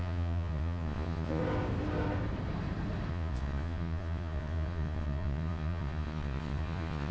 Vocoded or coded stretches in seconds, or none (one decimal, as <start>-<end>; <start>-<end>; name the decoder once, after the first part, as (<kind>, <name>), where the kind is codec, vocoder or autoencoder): 0.0-1.4 (vocoder, Vocos); 3.1-7.1